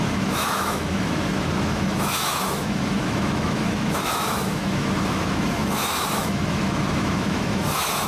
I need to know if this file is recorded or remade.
remade